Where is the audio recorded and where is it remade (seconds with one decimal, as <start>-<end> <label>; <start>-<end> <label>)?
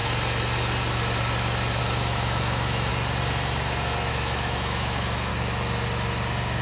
0.0-1.8 recorded; 1.8-2.9 remade; 2.9-4.1 recorded; 4.1-5.3 remade; 5.3-6.6 recorded